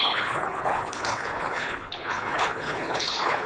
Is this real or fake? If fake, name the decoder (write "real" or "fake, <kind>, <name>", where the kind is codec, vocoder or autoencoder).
fake, codec, HILCodec